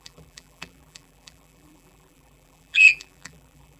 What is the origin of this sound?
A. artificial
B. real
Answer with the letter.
A